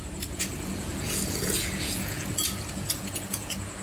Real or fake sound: fake